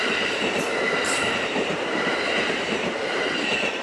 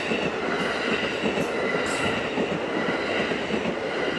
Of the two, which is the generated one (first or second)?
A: first